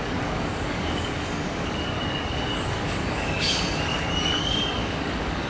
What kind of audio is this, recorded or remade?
remade